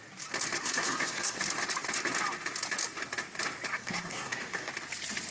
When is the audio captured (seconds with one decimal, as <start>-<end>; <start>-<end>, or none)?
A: 0.0-0.6; 1.4-3.7; 4.7-5.3

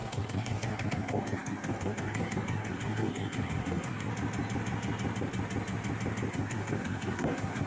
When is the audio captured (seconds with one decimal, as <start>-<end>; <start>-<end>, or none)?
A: 4.1-6.3

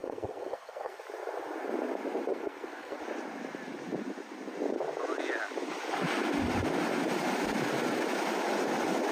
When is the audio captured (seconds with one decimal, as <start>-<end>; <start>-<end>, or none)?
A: 1.0-2.3; 3.0-9.1

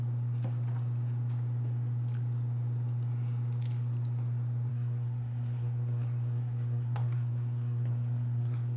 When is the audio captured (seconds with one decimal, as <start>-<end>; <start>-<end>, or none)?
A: 0.0-4.7